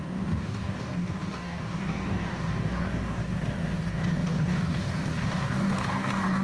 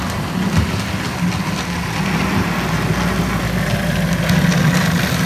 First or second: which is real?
second